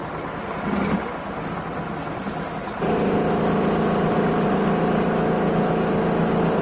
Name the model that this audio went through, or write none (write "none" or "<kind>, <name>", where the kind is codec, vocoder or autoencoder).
none